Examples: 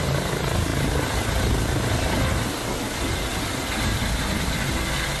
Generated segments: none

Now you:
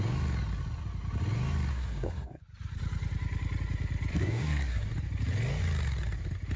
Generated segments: 1.7-2.4 (codec, SNAC); 4.1-4.9

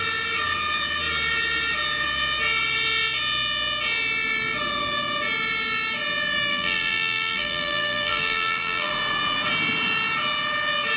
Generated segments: 6.5-8.9 (vocoder, BigVGAN v2)

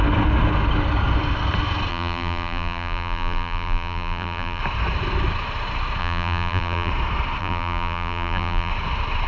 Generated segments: 1.9-4.6 (vocoder, BigVGAN v2); 6.0-6.9; 7.4-8.7

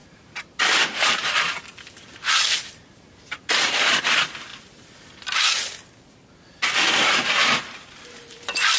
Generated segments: 0.0-1.5 (vocoder, BigVGAN v2); 2.1-3.9; 7.4-8.4

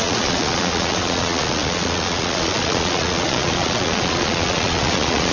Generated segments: 0.0-5.3 (vocoder, Vocos)